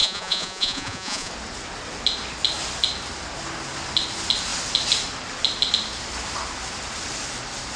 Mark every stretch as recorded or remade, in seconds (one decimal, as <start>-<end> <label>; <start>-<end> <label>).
0.0-1.3 remade; 1.3-7.8 recorded

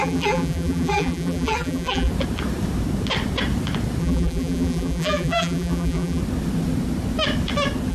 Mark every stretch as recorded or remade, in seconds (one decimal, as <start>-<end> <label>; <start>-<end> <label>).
0.0-2.1 remade; 2.1-4.0 recorded; 4.0-6.2 remade; 6.2-7.9 recorded

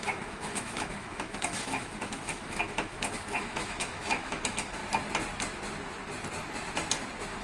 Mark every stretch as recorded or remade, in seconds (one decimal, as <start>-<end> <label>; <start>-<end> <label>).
0.0-4.8 remade; 4.8-7.4 recorded

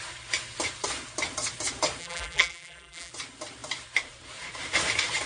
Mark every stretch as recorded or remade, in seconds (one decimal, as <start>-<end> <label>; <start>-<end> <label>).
0.0-2.0 recorded; 2.0-3.1 remade; 3.1-5.3 recorded

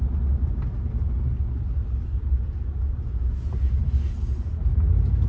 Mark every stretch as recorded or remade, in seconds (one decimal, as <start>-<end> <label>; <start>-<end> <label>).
0.0-5.3 recorded

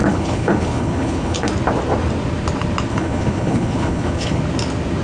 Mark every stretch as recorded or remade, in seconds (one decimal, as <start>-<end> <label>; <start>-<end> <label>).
0.0-1.5 remade; 1.5-2.9 recorded; 2.9-4.4 remade; 4.4-5.0 recorded

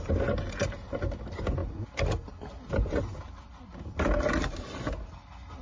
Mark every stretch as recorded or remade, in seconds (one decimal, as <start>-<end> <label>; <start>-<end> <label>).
0.0-5.6 recorded